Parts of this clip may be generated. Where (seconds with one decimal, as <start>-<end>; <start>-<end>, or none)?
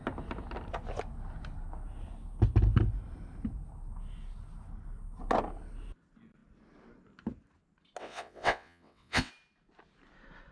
8.0-9.3